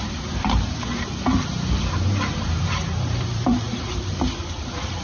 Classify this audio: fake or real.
fake